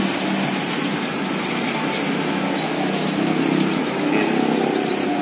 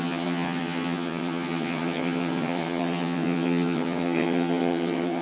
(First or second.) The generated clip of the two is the second